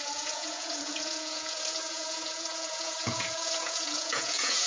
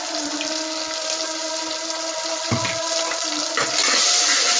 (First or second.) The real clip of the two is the second